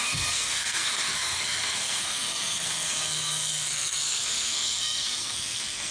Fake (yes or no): yes